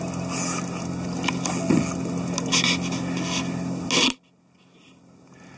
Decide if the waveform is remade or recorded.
recorded